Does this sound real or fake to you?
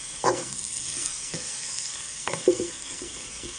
fake